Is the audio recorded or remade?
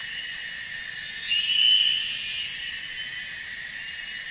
recorded